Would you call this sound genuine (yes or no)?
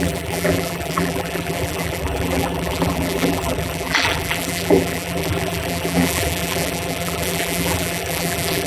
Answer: no